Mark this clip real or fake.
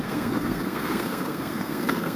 fake